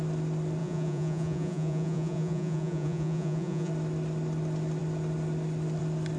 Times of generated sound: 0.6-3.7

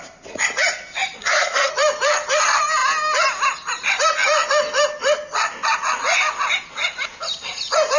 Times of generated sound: 1.2-1.7

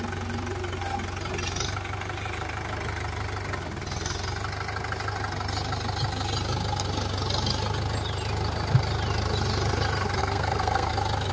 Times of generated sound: 10.2-10.9

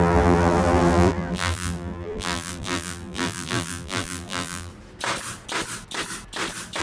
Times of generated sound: 0.0-4.7

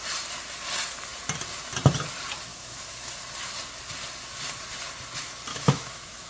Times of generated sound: 2.5-3.1; 5.5-6.3

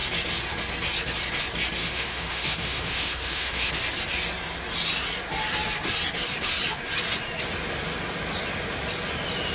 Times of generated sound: 1.8-3.7

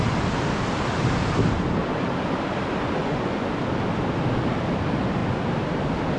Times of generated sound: 3.0-3.5

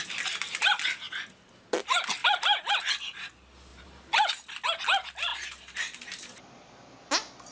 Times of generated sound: 2.2-2.7; 3.7-4.3